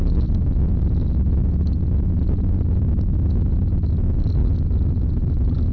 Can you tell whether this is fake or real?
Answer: real